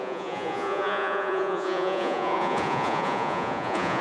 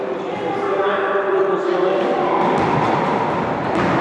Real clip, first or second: second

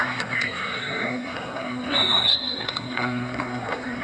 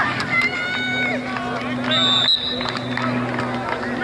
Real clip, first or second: second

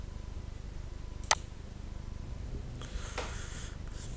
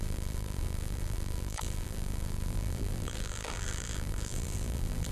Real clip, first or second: first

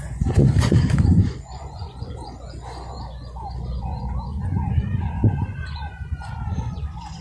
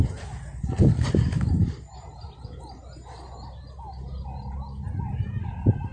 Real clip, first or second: second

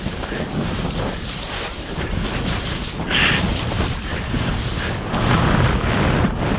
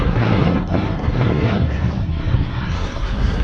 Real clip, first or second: first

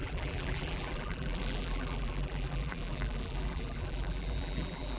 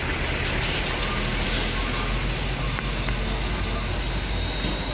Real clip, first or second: second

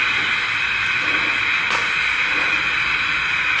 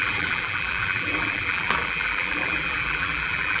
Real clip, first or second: first